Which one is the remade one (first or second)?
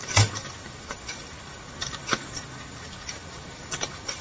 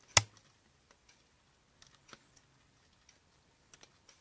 first